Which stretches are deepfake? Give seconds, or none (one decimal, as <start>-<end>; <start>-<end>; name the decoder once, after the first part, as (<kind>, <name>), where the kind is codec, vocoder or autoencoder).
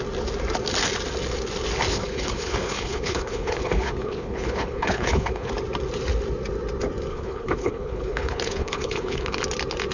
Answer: 1.9-5.5 (codec, HILCodec); 7.1-9.4